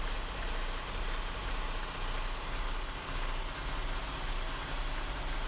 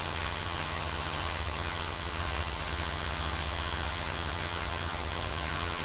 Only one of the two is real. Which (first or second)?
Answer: first